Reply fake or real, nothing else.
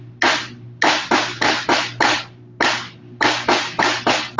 real